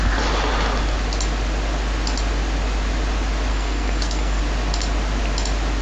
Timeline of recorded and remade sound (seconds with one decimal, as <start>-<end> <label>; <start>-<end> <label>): 0.0-3.5 recorded; 3.5-4.4 remade; 4.4-5.8 recorded